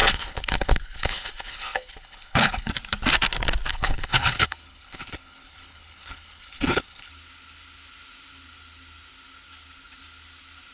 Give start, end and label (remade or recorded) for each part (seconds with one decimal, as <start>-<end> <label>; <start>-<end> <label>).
0.0-2.7 remade; 2.7-3.7 recorded; 3.7-7.1 remade; 7.1-10.7 recorded